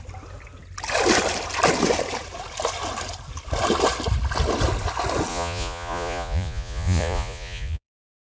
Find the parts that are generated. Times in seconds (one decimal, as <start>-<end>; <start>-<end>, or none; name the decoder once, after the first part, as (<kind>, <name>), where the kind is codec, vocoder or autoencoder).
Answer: 5.3-8.3 (vocoder, Vocos)